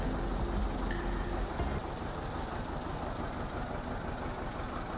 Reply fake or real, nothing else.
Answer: real